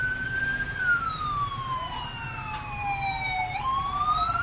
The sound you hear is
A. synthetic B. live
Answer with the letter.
B